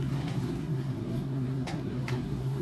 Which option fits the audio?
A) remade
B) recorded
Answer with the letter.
A